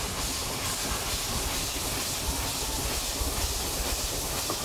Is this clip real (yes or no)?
yes